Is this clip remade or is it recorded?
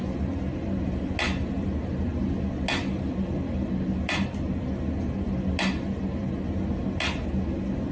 recorded